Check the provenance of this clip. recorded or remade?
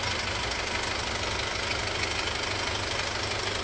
recorded